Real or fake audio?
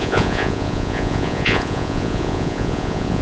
fake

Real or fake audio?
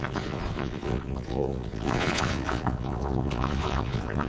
fake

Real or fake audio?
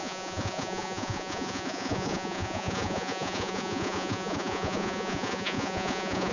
fake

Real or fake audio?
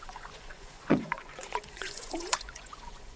fake